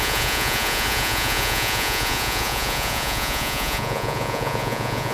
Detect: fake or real fake